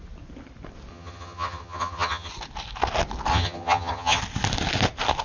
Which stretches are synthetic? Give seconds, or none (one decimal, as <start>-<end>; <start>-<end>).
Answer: 0.9-2.3; 3.3-4.2